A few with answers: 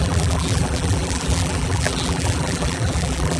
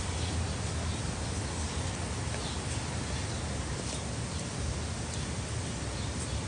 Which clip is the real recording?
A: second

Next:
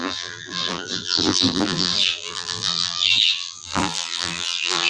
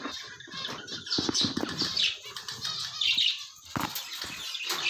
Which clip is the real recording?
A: second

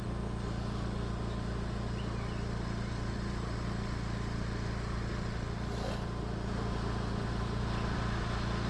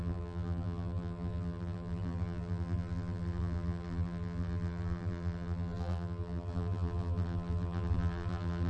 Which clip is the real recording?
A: first